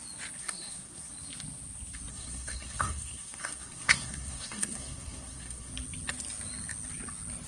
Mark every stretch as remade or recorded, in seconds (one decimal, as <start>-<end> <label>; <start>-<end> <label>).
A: 0.0-0.4 recorded; 0.4-1.1 remade; 1.1-2.1 recorded; 2.1-5.7 remade; 5.7-7.5 recorded